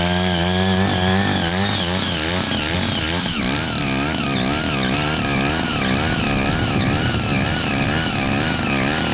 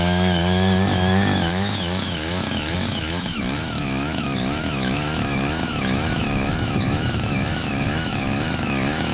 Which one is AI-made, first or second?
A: second